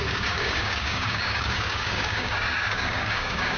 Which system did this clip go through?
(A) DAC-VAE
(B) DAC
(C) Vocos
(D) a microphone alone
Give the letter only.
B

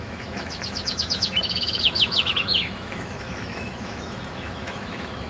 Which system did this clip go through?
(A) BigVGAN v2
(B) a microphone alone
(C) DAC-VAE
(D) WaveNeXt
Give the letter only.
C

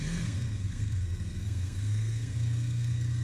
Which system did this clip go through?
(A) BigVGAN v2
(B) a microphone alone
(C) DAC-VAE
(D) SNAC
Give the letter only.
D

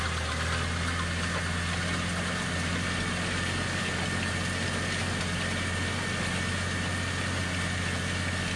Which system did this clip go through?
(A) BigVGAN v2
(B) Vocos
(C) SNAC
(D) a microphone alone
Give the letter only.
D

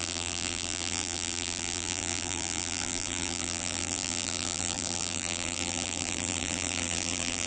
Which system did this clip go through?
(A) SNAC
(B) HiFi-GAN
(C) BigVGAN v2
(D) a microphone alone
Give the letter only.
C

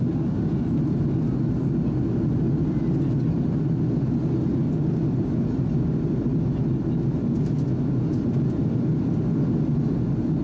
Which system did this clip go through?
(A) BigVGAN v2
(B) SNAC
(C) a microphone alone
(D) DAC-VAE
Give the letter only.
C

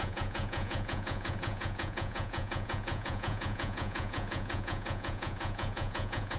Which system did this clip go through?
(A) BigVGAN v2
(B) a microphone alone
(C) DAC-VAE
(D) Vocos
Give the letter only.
D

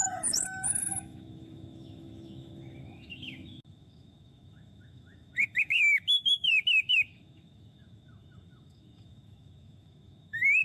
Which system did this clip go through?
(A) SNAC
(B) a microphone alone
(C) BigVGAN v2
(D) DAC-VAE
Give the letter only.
D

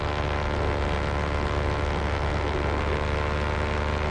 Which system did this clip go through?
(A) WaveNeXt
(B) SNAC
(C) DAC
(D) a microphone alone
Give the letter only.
D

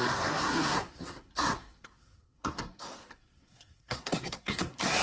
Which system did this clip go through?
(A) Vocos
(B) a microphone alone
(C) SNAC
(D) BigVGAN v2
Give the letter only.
C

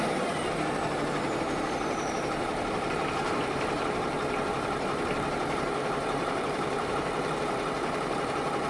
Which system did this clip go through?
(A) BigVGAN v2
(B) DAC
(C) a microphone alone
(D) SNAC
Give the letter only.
A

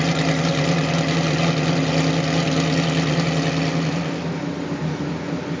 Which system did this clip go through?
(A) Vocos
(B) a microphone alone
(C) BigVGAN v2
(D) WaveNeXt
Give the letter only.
B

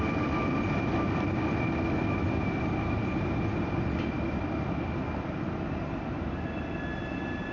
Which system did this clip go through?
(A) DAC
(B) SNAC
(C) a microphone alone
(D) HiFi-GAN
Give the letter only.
C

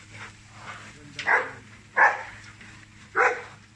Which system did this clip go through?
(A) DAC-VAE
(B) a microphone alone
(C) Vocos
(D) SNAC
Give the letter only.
B